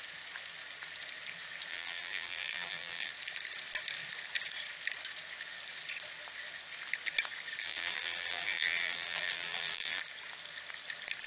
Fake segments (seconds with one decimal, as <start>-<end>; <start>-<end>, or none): 1.7-3.1; 7.6-10.0